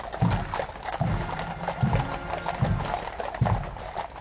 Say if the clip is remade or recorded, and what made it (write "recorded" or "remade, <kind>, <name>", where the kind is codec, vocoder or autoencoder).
recorded